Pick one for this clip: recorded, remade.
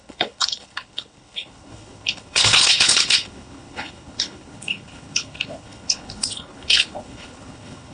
remade